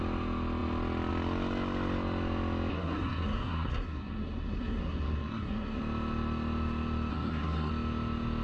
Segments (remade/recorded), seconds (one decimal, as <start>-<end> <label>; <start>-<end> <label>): 0.0-2.7 recorded; 2.7-5.8 remade; 5.8-7.1 recorded; 7.1-7.7 remade; 7.7-8.4 recorded